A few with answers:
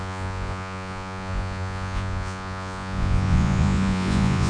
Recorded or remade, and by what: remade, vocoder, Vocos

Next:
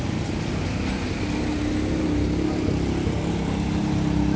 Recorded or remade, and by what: recorded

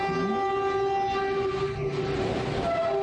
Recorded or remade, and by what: recorded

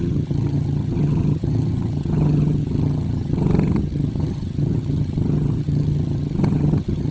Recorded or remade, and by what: remade, vocoder, HiFi-GAN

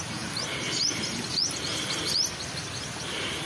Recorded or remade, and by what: recorded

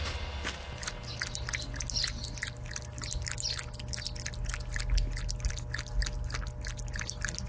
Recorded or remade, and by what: recorded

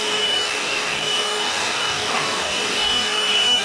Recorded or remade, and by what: remade, codec, DAC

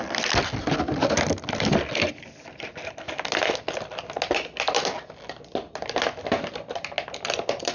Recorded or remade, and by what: recorded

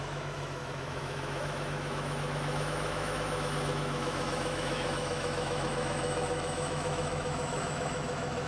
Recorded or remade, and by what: remade, autoencoder, DAC-VAE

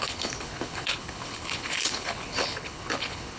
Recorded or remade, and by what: remade, codec, HILCodec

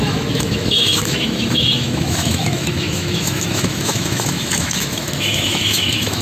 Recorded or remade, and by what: remade, autoencoder, DAC-VAE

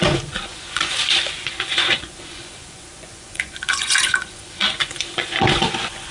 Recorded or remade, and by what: remade, vocoder, Vocos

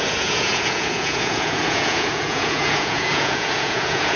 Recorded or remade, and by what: remade, vocoder, Vocos